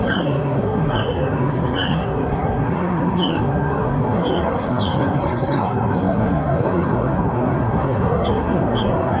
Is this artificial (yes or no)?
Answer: yes